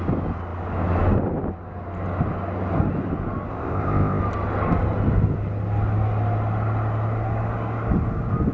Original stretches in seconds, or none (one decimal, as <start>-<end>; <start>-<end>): 0.0-3.5; 4.2-8.5